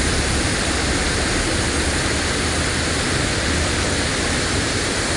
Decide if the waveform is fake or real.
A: real